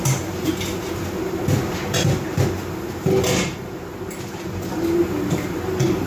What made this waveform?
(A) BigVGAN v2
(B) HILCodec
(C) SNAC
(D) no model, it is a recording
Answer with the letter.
D